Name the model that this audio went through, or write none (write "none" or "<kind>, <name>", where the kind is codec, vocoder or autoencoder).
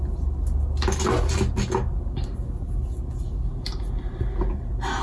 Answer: none